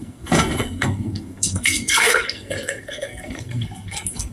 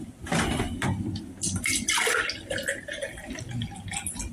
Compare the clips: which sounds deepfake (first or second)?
first